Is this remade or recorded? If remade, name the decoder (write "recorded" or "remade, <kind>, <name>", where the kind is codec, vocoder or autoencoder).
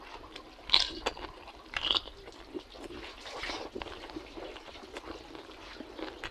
recorded